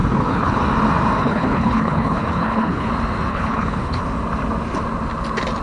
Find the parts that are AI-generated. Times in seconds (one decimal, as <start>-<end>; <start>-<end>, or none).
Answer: 0.0-0.6; 1.2-2.9; 3.3-4.0